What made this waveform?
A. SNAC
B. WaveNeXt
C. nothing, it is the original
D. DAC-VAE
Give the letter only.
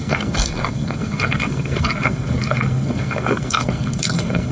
A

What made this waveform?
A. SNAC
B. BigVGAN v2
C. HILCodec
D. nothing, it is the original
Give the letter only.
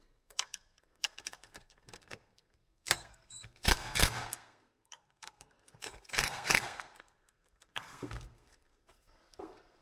A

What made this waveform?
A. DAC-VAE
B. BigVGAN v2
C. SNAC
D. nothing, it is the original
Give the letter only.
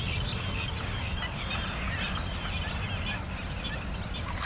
D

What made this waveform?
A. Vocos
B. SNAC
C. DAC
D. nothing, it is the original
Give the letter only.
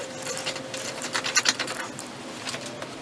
D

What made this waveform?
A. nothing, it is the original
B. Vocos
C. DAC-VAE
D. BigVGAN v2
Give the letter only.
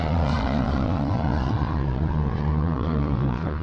B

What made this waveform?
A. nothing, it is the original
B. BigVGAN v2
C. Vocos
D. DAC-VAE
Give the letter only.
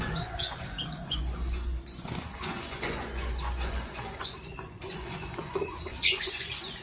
C